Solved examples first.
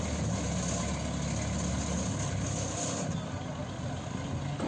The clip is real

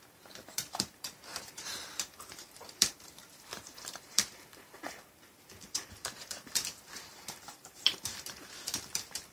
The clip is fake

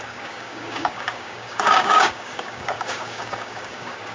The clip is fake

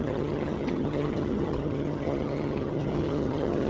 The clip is fake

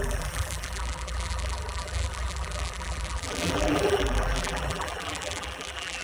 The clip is fake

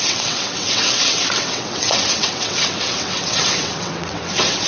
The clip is fake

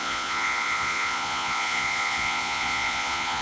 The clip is fake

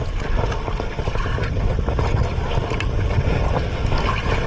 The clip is real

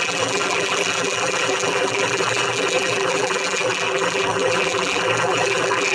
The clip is fake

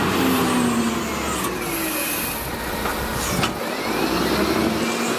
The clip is real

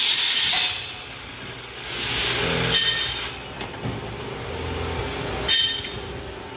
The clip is real